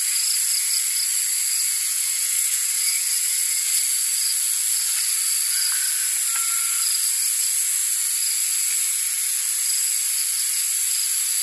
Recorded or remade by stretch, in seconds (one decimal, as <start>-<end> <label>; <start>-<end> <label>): 0.0-1.9 recorded; 1.9-3.8 remade; 3.8-11.4 recorded